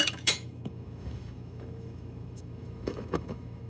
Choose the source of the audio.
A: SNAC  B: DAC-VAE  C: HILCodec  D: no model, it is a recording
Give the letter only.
B